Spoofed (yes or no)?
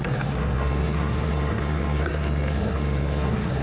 yes